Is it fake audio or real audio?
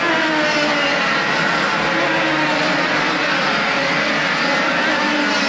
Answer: real